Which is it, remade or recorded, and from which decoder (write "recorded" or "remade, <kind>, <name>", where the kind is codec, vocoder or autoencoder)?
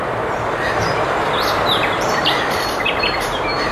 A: remade, vocoder, BigVGAN v2